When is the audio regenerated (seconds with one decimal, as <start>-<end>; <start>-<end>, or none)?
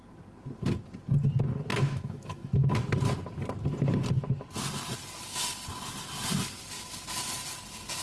1.7-2.6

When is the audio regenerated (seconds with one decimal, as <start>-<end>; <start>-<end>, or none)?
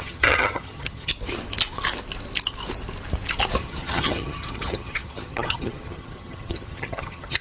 0.0-1.1; 3.6-7.4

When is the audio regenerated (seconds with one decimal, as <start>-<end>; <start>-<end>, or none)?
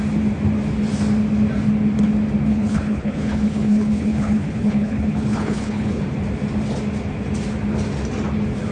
2.5-6.0